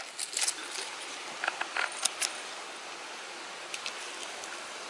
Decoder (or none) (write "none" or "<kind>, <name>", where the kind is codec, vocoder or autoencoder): vocoder, BigVGAN v2